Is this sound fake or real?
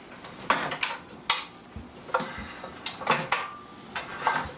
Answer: real